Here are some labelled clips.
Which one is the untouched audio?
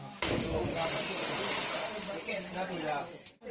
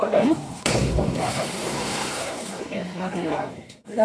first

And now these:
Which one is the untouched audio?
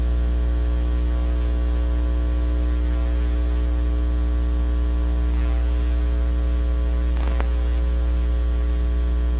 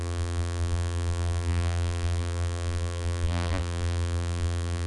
first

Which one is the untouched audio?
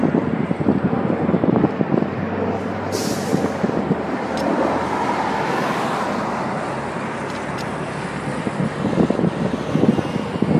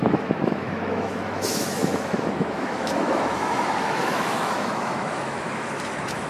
first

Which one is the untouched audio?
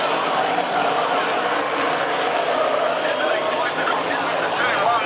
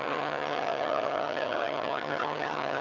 first